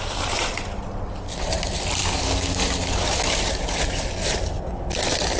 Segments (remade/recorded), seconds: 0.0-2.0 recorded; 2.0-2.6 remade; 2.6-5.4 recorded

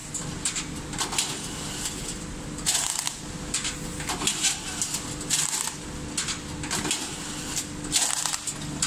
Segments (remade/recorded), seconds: 0.0-8.9 recorded

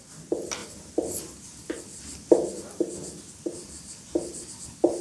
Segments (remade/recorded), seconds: 0.0-0.6 recorded; 0.6-1.8 remade; 1.8-5.0 recorded